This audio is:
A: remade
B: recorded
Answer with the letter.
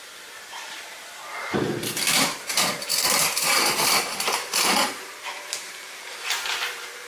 A